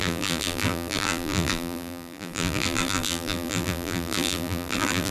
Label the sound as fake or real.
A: fake